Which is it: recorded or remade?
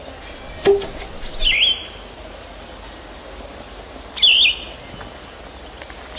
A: recorded